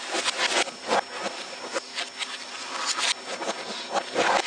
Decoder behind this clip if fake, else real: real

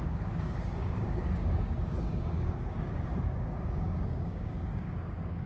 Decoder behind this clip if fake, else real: fake, codec, DAC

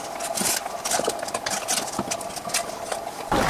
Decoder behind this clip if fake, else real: real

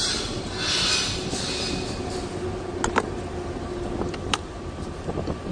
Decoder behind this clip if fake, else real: real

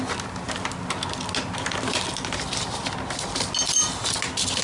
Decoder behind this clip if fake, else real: real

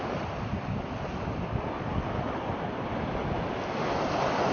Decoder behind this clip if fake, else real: real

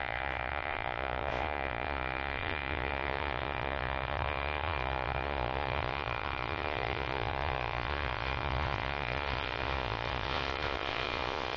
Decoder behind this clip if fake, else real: fake, vocoder, Vocos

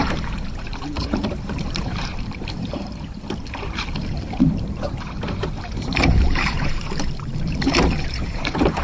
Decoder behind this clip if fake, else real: fake, vocoder, BigVGAN v2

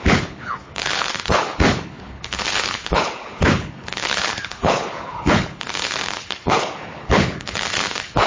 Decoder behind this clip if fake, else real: fake, codec, HILCodec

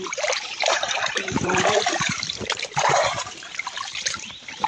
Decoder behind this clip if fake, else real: fake, vocoder, BigVGAN v2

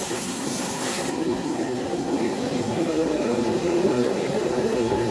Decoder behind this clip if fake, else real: fake, codec, SNAC